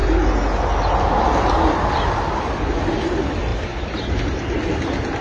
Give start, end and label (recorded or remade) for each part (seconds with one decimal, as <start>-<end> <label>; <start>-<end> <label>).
0.0-5.2 recorded